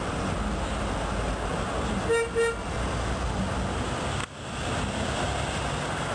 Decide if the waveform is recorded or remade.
recorded